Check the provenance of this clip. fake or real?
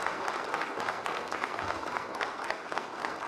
fake